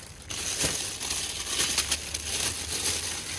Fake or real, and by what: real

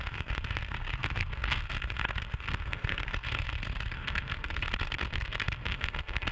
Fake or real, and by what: fake, codec, SNAC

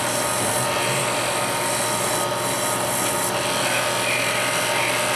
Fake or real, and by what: real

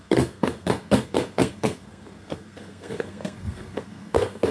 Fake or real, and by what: fake, codec, SNAC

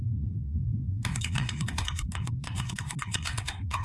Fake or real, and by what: fake, codec, SNAC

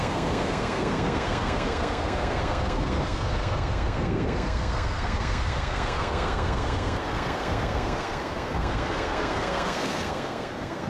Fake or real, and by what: fake, codec, SNAC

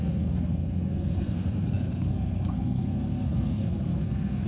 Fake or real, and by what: fake, codec, SNAC